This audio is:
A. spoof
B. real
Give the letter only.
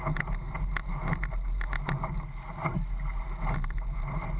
B